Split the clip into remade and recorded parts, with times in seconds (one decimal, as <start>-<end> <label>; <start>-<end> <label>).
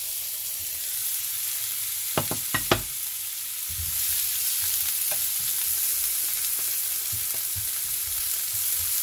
0.0-9.0 recorded